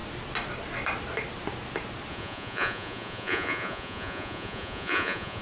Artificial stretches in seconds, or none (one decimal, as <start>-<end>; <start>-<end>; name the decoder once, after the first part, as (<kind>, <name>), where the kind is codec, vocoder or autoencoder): 2.1-5.4 (vocoder, Vocos)